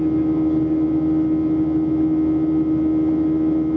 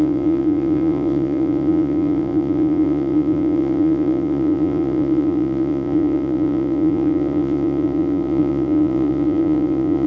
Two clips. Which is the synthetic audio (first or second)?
second